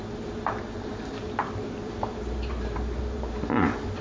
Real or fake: fake